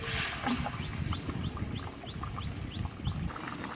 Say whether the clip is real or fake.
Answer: real